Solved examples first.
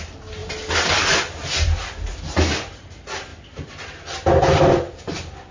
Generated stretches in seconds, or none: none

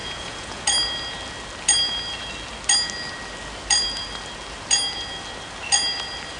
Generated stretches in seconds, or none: 0.0-0.6 (vocoder, Vocos)